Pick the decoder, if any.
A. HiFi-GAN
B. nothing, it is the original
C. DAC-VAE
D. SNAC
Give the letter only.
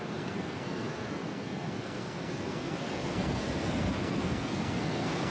D